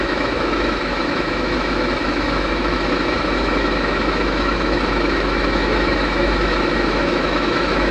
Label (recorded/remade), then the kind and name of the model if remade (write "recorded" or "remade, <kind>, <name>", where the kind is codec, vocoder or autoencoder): remade, autoencoder, DAC-VAE